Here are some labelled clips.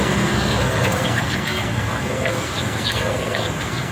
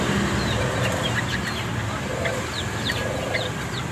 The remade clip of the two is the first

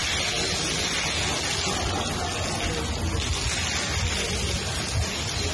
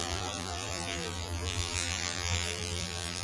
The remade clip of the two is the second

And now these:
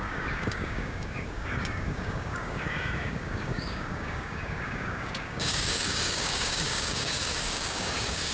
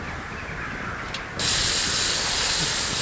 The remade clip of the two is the first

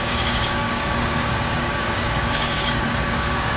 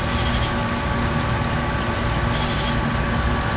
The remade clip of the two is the first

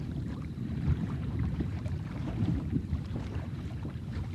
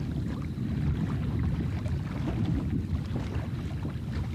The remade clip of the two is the first